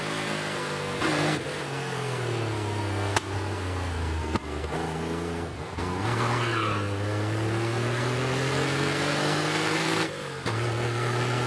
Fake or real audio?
fake